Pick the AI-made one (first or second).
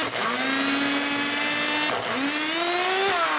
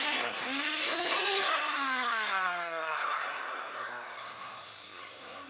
second